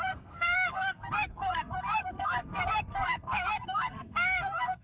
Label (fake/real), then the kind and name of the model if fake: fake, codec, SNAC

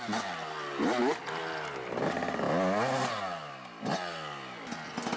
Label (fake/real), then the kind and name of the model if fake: real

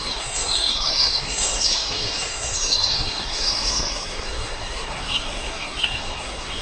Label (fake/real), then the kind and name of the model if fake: fake, codec, SNAC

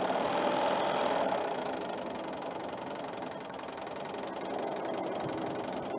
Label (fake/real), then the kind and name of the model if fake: real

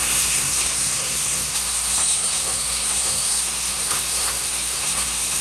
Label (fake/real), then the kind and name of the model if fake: fake, codec, SNAC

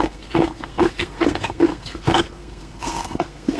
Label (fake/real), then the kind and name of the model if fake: fake, codec, SNAC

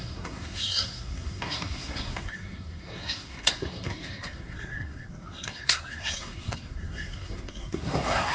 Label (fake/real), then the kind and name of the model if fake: fake, codec, SNAC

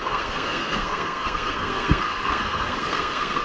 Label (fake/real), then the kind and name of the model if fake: fake, codec, SNAC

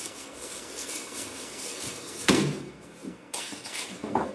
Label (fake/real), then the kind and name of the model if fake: fake, codec, SNAC